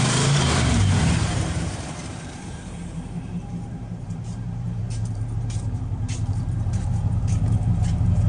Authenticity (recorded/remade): remade